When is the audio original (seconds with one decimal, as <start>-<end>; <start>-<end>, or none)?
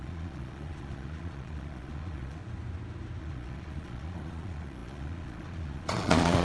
2.4-3.2